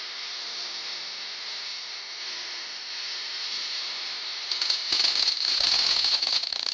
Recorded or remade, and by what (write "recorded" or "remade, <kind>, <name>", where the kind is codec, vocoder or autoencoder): recorded